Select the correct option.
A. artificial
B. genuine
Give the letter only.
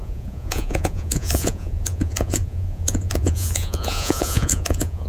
A